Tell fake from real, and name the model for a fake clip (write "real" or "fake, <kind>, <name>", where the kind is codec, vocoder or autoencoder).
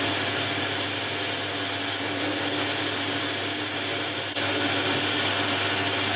real